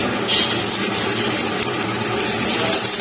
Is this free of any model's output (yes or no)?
yes